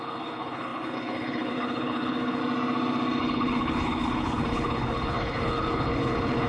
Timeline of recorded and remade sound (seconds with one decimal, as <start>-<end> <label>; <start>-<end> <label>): 0.0-2.4 remade; 2.4-3.2 recorded; 3.2-6.5 remade